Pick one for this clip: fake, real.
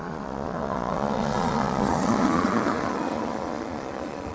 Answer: fake